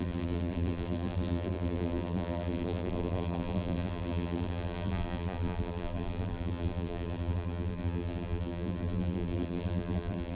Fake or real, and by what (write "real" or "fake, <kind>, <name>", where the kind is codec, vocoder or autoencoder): fake, vocoder, BigVGAN v2